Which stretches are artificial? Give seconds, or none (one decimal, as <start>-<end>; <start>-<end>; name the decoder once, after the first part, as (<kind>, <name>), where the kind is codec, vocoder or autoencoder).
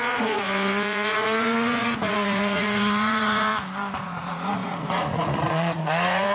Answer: 0.0-3.5 (vocoder, Vocos); 4.0-6.3